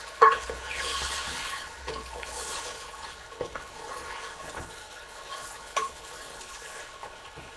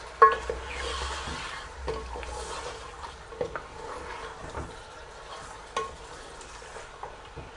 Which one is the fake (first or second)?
first